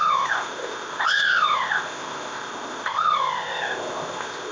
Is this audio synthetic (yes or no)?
yes